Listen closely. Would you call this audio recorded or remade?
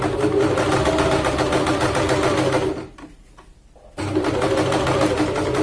recorded